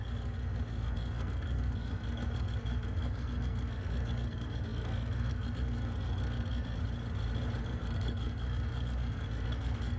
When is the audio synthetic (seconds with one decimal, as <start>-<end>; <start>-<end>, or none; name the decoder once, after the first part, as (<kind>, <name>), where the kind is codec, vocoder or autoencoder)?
0.0-6.8 (codec, SNAC); 7.6-10.0